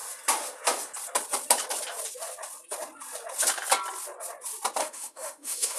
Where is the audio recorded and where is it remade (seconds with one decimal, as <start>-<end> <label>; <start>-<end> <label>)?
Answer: 0.0-4.8 recorded; 4.8-5.8 remade